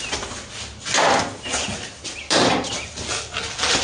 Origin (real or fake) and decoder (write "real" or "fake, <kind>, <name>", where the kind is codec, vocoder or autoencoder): real